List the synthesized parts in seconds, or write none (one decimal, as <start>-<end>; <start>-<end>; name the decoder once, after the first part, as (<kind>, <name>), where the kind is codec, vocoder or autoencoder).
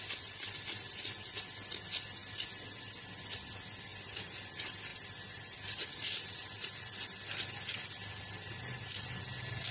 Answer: 3.9-4.4 (vocoder, BigVGAN v2)